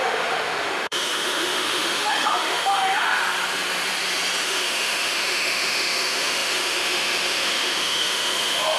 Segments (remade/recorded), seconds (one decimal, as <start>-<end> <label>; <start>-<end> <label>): 0.0-3.2 remade; 3.2-4.4 recorded; 4.4-8.8 remade